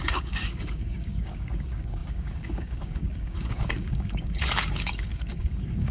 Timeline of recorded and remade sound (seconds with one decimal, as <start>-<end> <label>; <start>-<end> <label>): 0.0-5.9 remade